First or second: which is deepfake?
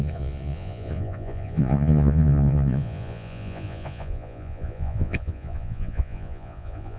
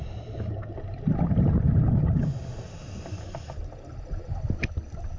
first